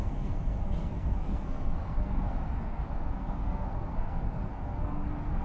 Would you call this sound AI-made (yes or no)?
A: yes